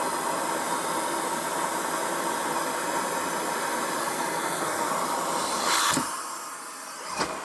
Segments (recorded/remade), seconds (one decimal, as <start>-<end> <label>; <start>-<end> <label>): 0.0-4.0 recorded; 4.0-4.9 remade; 4.9-7.4 recorded